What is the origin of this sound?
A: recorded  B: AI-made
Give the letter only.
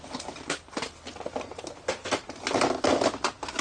A